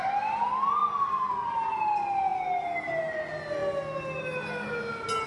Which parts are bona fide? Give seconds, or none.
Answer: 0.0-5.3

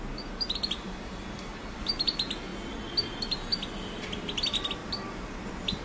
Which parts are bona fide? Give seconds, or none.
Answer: 2.5-4.1

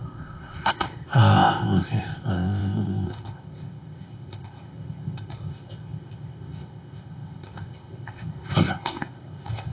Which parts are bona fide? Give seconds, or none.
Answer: none

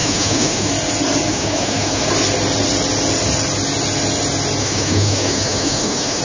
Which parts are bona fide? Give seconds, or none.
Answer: 0.7-1.3; 2.1-4.6

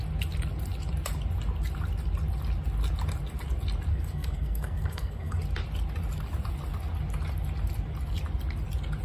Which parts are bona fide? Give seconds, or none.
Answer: 0.0-3.9; 5.4-9.0

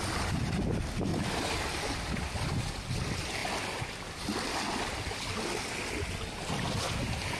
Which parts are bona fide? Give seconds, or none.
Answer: 0.0-7.4

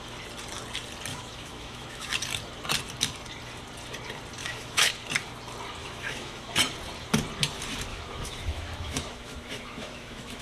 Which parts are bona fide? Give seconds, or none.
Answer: 0.0-1.1; 2.1-4.4; 4.9-5.8; 6.5-7.9